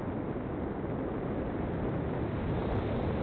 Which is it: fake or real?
real